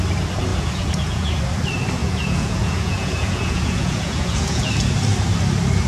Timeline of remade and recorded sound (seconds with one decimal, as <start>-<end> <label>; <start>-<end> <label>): 0.0-0.5 recorded; 0.5-1.4 remade; 1.4-2.0 recorded; 2.0-4.7 remade; 4.7-5.9 recorded